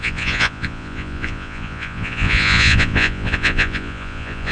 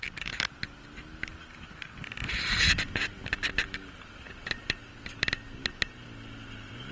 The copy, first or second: first